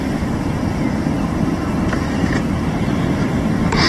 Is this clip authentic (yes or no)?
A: yes